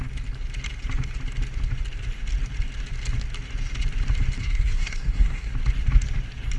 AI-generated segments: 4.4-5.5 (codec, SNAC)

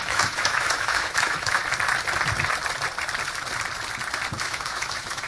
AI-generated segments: 0.0-1.6 (autoencoder, DAC-VAE); 4.4-5.3

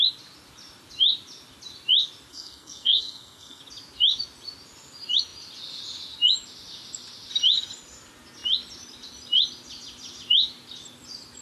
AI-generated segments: 2.3-3.6 (codec, SNAC)

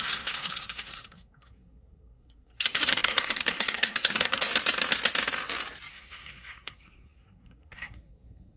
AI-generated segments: 0.0-4.5 (codec, SNAC); 5.9-8.6

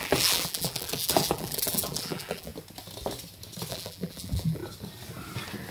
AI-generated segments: 0.0-2.5 (vocoder, BigVGAN v2); 3.7-4.6